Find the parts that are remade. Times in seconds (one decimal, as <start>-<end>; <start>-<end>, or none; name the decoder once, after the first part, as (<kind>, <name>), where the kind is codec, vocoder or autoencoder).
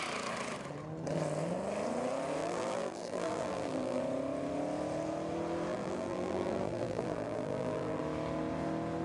2.4-4.0 (vocoder, BigVGAN v2); 5.7-8.0